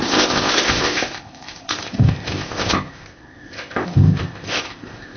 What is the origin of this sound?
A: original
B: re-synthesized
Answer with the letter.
B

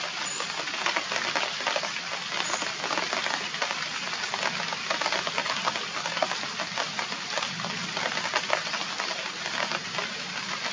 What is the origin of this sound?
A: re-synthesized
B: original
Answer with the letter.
B